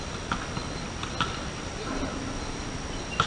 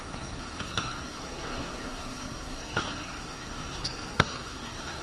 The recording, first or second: first